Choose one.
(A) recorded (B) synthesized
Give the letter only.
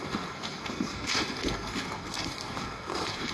B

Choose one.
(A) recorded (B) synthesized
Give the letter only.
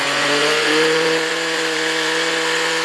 B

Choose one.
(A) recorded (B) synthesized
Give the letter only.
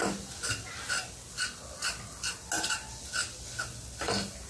A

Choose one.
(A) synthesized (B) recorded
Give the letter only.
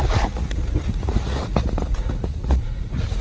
A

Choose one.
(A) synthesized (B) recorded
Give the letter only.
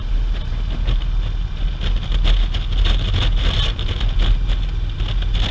B